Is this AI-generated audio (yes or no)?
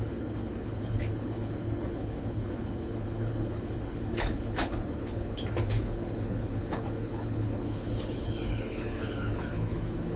yes